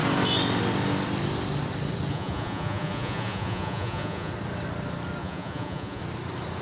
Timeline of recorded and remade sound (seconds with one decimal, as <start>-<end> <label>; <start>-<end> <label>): 0.0-2.1 recorded; 2.1-4.3 remade; 4.3-5.2 recorded; 5.2-6.0 remade; 6.0-6.6 recorded